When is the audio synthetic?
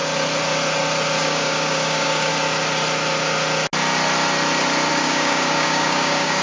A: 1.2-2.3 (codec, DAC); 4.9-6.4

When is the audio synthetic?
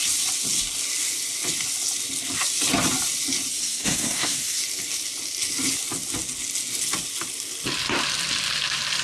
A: 3.5-4.6 (codec, SNAC)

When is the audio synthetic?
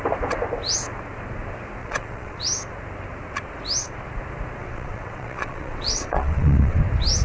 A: 1.8-2.4 (vocoder, WaveNeXt); 4.6-6.8